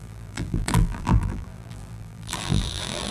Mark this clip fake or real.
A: fake